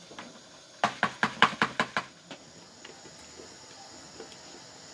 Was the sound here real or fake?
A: real